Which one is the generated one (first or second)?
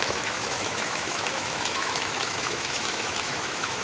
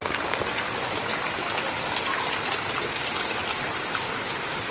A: first